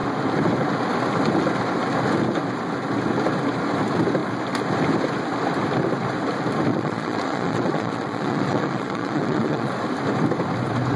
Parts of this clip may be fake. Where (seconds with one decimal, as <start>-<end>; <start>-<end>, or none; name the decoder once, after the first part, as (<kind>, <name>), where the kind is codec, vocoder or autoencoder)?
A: 6.7-9.7 (vocoder, Vocos)